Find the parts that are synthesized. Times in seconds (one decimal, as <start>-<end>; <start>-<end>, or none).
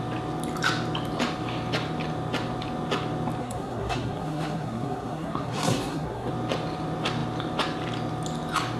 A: 3.4-6.3